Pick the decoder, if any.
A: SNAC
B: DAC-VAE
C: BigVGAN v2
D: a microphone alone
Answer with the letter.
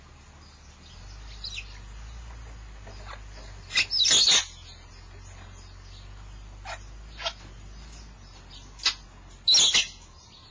D